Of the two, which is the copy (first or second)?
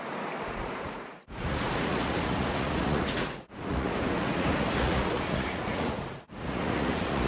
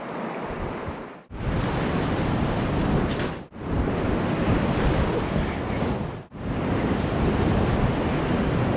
first